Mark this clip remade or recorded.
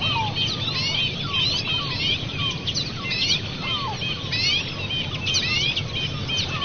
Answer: recorded